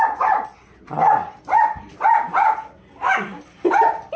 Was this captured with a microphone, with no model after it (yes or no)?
yes